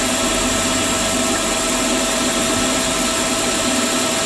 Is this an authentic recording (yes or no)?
yes